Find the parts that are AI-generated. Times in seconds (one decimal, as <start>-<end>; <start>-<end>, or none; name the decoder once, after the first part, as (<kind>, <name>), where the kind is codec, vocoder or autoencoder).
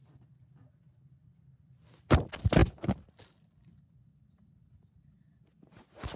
none